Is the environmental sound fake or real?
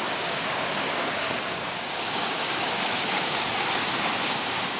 fake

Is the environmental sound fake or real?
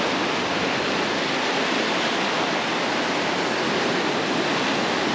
real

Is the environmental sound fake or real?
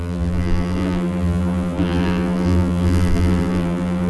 fake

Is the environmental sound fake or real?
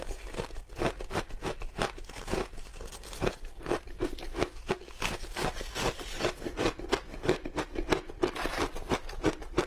real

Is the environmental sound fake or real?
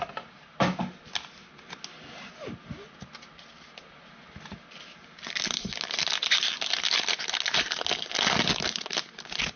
real